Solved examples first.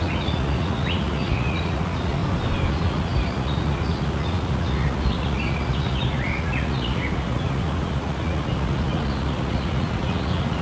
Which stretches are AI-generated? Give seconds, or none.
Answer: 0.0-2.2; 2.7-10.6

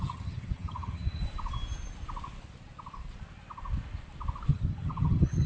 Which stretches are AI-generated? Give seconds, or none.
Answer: 0.0-1.2; 4.5-5.5

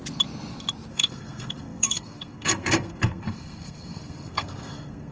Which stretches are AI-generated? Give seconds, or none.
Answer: 0.9-5.1

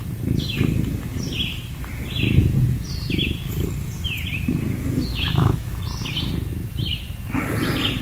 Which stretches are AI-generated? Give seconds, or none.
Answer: 5.1-5.8

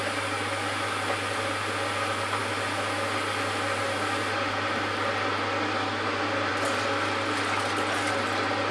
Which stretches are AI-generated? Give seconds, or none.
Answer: none

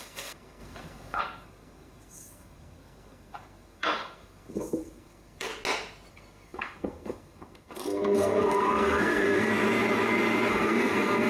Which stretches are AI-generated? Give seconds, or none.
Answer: 0.0-5.5; 6.1-9.5; 10.5-11.3

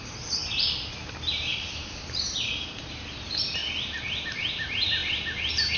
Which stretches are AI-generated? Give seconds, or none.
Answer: 0.0-0.4; 1.2-3.6; 4.2-5.8